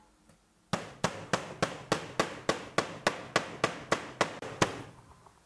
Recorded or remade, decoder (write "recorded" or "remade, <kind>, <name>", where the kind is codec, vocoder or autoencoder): recorded